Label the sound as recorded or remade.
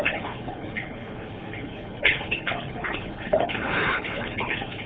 remade